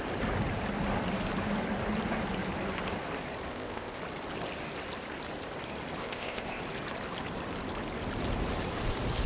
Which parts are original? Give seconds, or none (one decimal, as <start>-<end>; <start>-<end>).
0.0-3.5; 4.0-6.0; 6.6-9.3